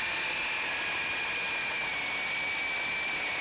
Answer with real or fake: real